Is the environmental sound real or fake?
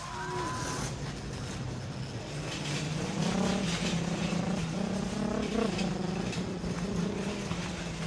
real